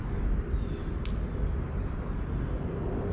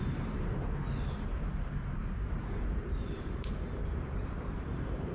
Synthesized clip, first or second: second